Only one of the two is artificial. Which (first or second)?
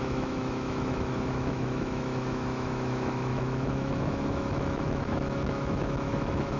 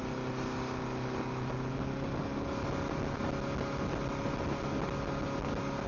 first